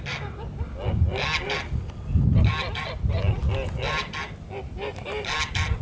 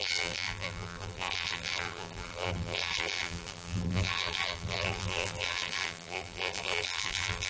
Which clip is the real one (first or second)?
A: first